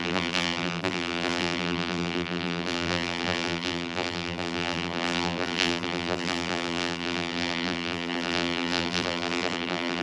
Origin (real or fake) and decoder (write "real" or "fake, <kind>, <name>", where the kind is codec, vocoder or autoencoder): fake, vocoder, BigVGAN v2